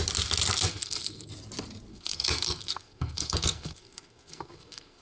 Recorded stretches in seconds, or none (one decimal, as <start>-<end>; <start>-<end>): 0.0-0.7; 1.3-1.9